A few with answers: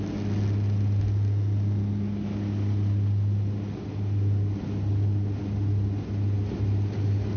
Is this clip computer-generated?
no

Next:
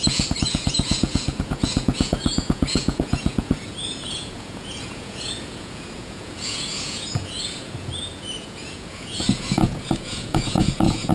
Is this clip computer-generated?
yes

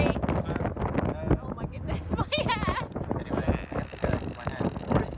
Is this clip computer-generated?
no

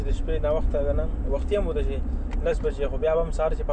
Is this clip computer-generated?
no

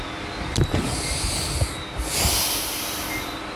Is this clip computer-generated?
no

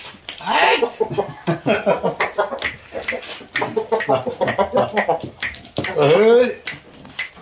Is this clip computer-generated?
no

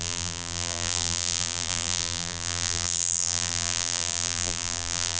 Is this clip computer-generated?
yes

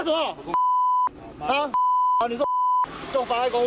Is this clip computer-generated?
no